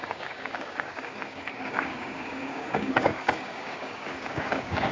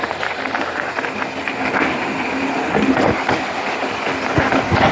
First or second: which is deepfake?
first